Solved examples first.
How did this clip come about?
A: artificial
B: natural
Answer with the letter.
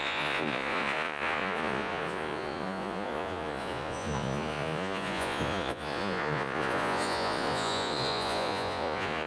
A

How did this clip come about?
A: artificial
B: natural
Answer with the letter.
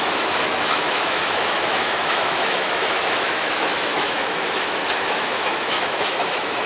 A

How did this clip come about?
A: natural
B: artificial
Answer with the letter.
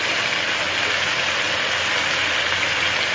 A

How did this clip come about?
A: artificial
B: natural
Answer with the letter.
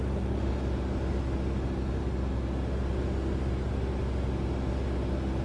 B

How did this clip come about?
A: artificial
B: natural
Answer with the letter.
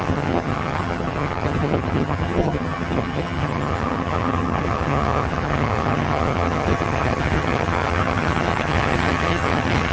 A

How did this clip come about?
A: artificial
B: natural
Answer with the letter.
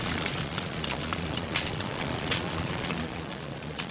A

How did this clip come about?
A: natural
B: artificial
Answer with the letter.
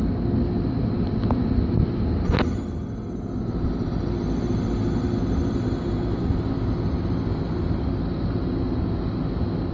A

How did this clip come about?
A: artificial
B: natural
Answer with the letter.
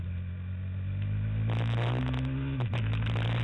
B